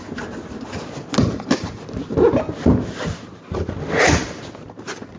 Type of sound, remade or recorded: recorded